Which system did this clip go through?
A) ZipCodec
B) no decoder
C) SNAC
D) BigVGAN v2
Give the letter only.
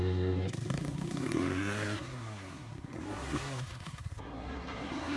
C